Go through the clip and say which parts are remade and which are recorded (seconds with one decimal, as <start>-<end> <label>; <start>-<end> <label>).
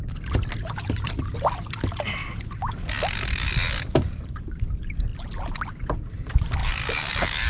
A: 0.0-7.5 recorded